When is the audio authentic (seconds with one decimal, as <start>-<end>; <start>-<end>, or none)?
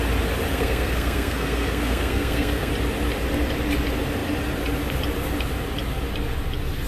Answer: 0.0-0.5; 2.7-6.9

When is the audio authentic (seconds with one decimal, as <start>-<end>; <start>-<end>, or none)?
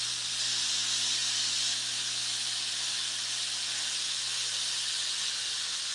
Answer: 0.0-5.9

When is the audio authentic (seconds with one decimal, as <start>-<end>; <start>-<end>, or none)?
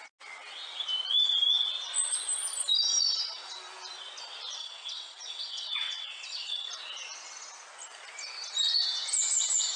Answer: 0.0-4.6; 6.7-9.8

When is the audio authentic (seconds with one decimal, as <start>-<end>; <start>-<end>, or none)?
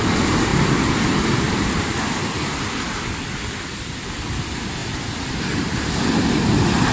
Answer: 0.0-0.5; 2.6-4.8; 6.0-6.9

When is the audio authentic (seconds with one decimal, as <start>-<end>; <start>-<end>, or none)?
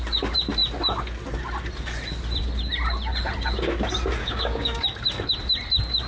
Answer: 0.0-4.2; 4.8-6.1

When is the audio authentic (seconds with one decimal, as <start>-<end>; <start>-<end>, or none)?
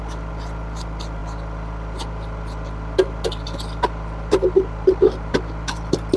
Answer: 0.0-6.2